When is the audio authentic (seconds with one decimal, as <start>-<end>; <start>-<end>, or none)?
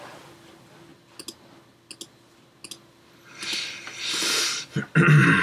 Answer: 0.0-5.4